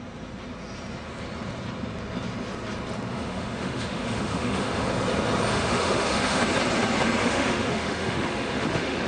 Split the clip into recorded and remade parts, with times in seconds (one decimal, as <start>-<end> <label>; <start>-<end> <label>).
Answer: 0.0-3.1 recorded; 3.1-4.9 remade; 4.9-5.5 recorded; 5.5-6.4 remade; 6.4-7.2 recorded; 7.2-9.1 remade